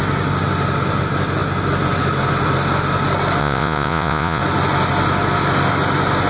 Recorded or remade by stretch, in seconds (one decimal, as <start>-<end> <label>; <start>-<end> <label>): 0.0-3.4 recorded; 3.4-4.4 remade; 4.4-6.3 recorded